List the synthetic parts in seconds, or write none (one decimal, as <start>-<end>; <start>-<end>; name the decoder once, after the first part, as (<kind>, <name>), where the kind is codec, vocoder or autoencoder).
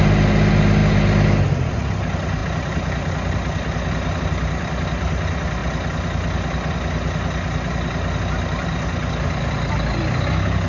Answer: none